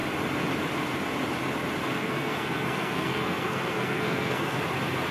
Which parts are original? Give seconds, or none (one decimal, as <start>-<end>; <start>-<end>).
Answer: 0.0-1.8; 4.6-5.1